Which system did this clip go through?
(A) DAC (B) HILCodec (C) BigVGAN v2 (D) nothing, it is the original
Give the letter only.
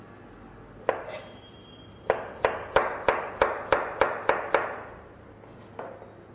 D